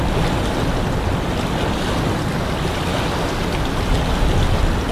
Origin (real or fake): real